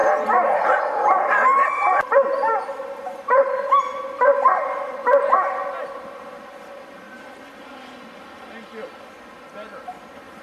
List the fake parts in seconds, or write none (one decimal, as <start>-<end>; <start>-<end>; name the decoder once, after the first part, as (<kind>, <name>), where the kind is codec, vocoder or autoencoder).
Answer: 0.0-2.6 (vocoder, BigVGAN v2)